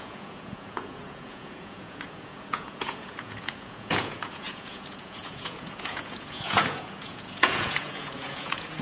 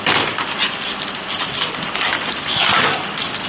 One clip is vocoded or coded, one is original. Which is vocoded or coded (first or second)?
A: first